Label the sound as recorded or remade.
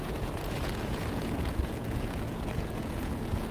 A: remade